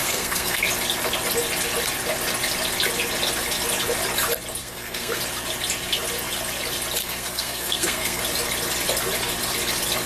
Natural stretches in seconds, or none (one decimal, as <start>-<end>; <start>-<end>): 0.6-4.6; 5.2-7.0; 8.2-10.1